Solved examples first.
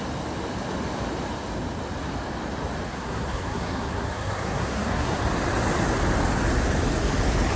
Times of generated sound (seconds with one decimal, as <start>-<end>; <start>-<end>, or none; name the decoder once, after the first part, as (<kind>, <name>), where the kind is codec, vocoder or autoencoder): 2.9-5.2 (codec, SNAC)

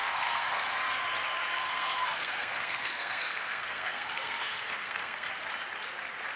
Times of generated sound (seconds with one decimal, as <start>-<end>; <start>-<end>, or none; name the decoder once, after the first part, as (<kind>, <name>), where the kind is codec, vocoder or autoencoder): 0.0-1.0 (codec, SNAC); 1.5-5.3

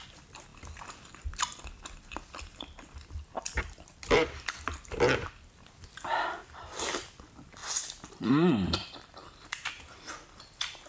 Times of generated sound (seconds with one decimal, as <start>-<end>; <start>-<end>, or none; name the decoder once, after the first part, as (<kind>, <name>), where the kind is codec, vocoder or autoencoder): 0.0-7.6 (vocoder, BigVGAN v2); 8.1-10.9

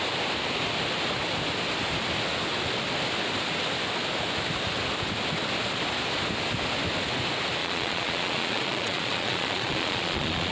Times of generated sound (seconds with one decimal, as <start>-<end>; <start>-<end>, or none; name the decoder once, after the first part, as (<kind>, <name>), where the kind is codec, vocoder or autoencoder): 7.6-10.5 (vocoder, Vocos)

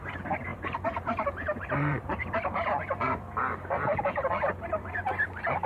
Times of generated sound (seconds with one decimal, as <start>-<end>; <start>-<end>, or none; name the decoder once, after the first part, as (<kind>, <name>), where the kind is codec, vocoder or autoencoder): 0.5-2.2 (vocoder, BigVGAN v2); 3.9-4.9